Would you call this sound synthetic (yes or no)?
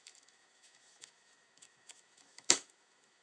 yes